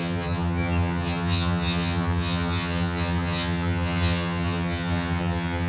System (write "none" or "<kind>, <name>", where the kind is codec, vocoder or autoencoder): vocoder, HiFi-GAN